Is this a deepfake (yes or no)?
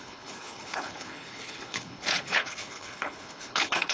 yes